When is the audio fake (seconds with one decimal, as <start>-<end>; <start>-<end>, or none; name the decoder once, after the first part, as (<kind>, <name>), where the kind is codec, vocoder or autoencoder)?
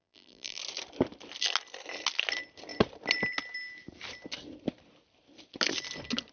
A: 0.0-0.6 (vocoder, BigVGAN v2)